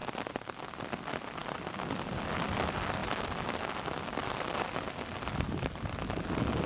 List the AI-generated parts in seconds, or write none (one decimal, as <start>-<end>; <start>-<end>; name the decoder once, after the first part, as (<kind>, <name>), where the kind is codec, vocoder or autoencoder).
none